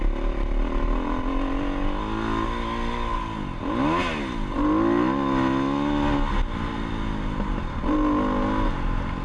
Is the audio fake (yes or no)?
no